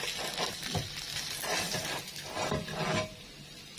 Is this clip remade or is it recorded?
recorded